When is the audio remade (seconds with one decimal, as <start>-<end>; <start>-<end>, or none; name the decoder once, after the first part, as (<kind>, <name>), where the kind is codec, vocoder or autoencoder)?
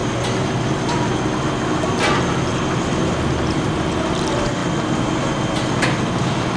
none